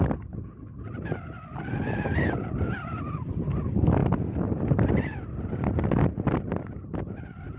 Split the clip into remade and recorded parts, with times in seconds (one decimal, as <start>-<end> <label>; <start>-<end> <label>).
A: 0.0-7.6 recorded